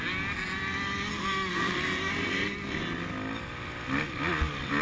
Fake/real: real